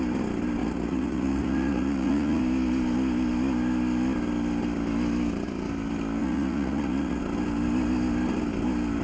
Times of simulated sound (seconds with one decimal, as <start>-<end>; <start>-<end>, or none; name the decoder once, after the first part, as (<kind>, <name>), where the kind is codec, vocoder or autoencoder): 0.6-2.4 (vocoder, Vocos); 6.2-7.2